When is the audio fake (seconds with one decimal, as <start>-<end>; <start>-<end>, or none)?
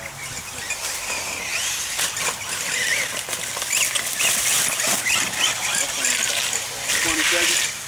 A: none